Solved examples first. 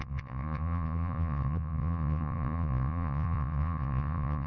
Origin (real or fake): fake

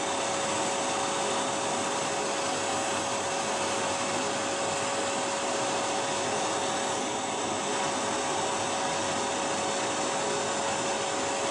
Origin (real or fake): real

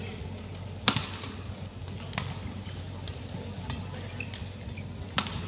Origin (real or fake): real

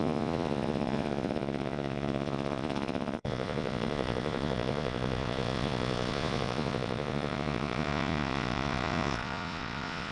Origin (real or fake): fake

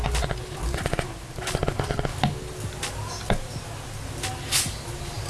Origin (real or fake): real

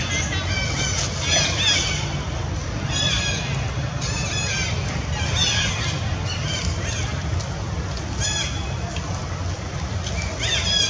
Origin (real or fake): real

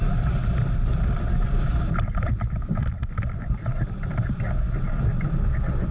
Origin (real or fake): real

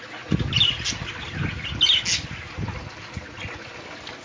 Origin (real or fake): real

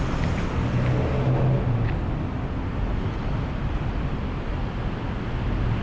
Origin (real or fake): real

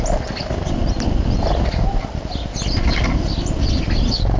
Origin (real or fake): real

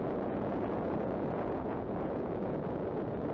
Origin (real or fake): fake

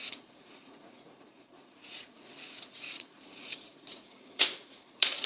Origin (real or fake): fake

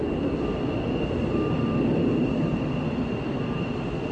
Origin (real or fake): real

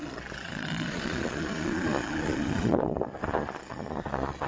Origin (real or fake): fake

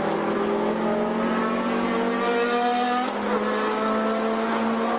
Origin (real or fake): real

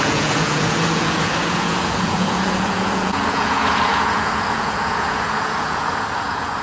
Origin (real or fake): fake